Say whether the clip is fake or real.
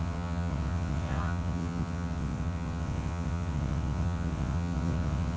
fake